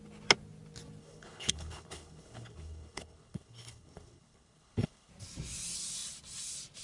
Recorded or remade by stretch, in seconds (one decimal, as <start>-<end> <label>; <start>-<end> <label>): 0.0-1.0 recorded; 1.0-5.1 remade; 5.1-6.8 recorded